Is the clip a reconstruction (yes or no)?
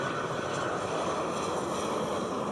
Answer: no